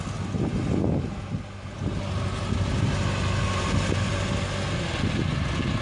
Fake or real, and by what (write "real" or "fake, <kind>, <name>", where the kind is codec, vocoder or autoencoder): real